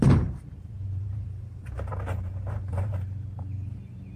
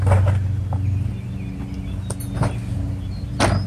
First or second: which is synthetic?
first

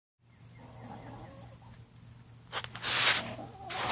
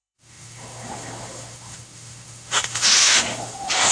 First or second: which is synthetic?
second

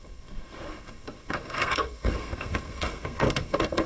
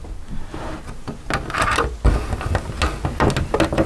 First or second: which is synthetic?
first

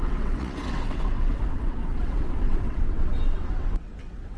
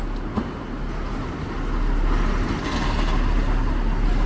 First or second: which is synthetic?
first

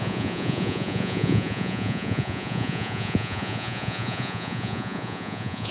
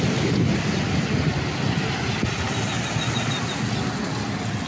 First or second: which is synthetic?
first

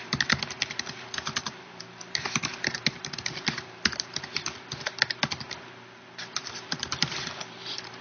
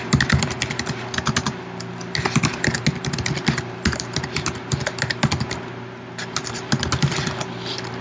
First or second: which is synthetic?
first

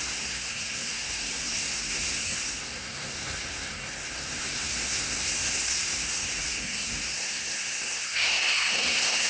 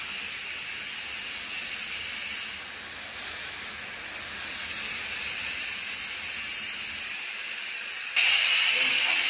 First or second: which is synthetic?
first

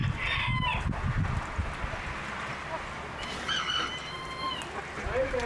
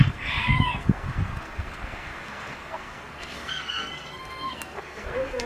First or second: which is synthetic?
second